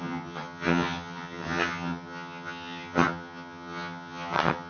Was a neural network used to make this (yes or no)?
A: yes